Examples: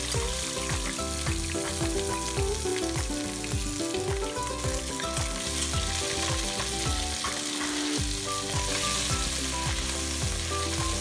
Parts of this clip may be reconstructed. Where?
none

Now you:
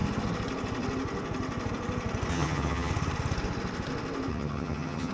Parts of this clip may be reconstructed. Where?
2.3-2.9; 4.3-5.1

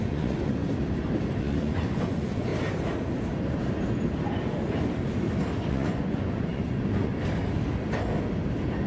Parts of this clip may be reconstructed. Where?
0.0-0.6; 1.4-2.5; 5.7-7.1

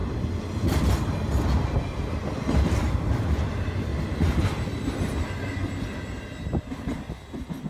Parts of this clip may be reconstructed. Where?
2.9-3.9; 7.1-7.7

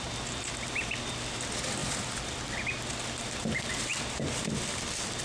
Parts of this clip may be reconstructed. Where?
1.8-2.6; 3.9-5.2